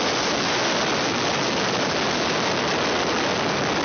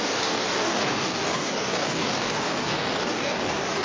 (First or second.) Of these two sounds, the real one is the first